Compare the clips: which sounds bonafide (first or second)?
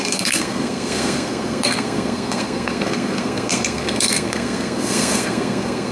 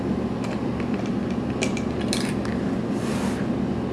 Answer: second